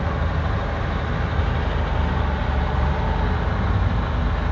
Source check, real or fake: real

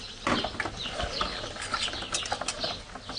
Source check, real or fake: real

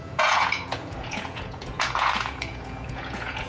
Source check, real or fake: fake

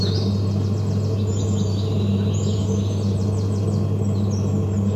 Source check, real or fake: real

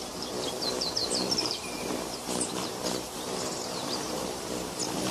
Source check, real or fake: fake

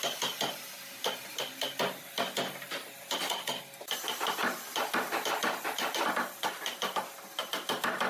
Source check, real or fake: real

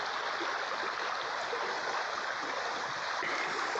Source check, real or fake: real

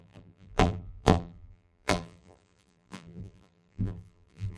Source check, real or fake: fake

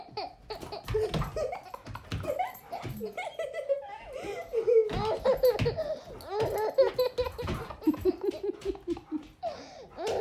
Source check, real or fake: real